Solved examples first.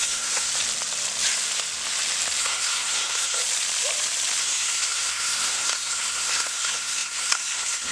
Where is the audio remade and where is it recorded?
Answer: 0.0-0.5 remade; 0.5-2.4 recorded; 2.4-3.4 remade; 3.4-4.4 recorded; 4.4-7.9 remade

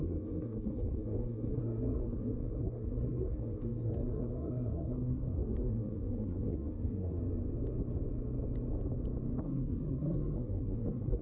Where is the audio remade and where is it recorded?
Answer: 0.0-7.2 remade; 7.2-9.4 recorded; 9.4-11.2 remade

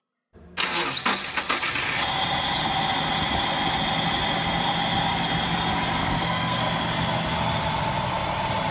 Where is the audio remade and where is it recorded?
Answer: 0.0-6.0 recorded; 6.0-6.6 remade; 6.6-8.7 recorded